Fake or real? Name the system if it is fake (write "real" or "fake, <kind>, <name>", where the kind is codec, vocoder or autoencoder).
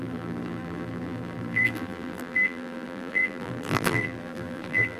fake, vocoder, BigVGAN v2